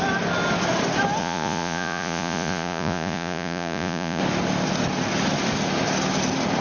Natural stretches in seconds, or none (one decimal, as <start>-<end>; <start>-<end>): 0.0-1.2; 4.2-6.6